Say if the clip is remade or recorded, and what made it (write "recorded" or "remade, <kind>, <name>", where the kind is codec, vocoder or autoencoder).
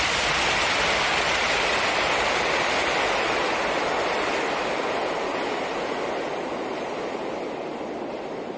recorded